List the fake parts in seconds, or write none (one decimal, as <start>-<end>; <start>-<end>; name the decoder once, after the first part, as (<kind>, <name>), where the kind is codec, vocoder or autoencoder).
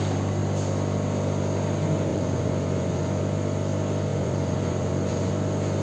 2.1-3.2 (vocoder, Vocos); 4.1-5.3